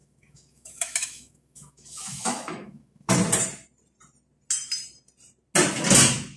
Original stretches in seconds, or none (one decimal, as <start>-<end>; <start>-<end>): 3.1-6.4